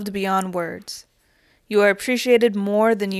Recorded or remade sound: recorded